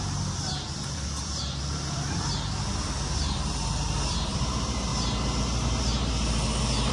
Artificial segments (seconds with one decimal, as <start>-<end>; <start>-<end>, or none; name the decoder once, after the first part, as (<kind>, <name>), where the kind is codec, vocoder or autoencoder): 0.0-4.9 (vocoder, BigVGAN v2)